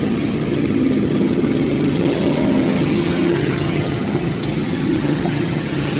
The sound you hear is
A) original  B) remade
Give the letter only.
B